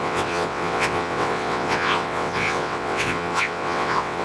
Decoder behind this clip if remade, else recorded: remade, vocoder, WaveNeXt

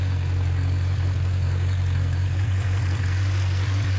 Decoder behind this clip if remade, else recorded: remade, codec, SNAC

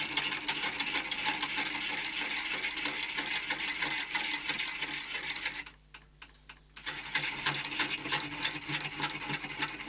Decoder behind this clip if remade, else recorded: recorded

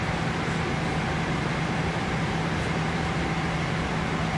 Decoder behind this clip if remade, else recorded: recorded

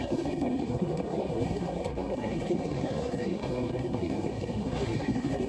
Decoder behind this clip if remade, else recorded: remade, codec, SNAC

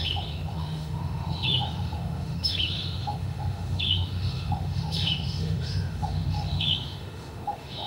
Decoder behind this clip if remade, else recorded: remade, autoencoder, DAC-VAE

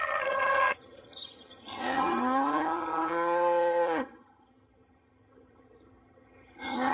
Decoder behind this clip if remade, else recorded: remade, vocoder, HiFi-GAN